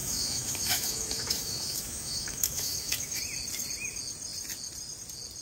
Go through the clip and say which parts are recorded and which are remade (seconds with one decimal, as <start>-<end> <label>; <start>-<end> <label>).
0.0-3.2 remade; 3.2-5.4 recorded